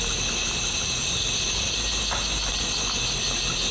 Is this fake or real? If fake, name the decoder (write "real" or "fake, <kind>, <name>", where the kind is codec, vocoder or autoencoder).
real